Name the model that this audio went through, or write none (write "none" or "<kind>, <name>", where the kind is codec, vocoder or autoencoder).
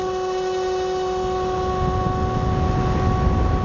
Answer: none